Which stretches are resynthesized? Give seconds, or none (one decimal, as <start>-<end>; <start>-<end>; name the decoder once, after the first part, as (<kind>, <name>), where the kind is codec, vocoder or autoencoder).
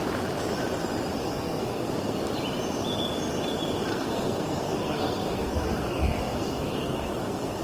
1.2-2.2 (codec, SNAC); 3.9-7.6